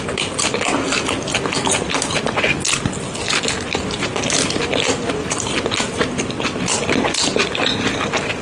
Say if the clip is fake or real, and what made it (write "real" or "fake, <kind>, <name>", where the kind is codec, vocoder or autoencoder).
real